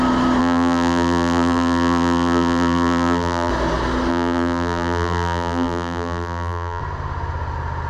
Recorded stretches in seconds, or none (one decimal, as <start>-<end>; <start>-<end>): 0.0-0.4; 3.5-4.1; 6.8-7.9